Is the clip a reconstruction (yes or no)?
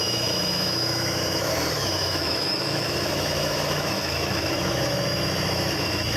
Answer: yes